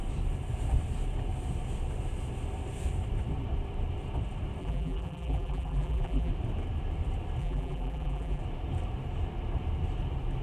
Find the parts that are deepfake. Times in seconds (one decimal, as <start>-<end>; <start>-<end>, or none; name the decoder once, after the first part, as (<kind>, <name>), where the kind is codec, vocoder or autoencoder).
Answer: 4.6-6.3 (vocoder, BigVGAN v2); 7.4-8.4